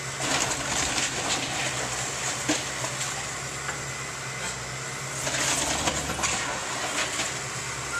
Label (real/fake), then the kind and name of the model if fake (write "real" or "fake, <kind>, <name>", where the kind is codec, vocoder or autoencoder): real